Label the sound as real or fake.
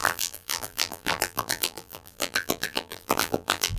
fake